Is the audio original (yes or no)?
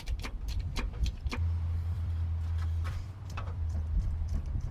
no